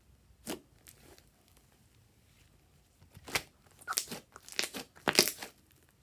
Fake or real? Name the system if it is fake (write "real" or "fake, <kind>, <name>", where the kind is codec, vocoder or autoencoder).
real